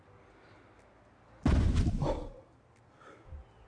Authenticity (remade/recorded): recorded